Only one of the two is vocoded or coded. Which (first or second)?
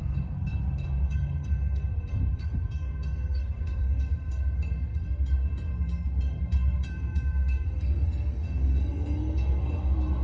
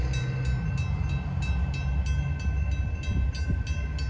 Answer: first